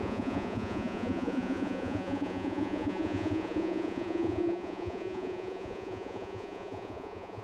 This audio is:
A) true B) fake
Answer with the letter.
B